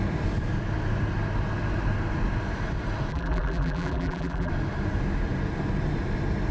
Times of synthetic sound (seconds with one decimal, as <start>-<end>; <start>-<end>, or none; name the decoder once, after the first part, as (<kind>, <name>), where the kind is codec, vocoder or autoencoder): 3.1-4.5 (vocoder, BigVGAN v2)